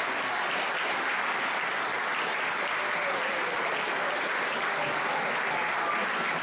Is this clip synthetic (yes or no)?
no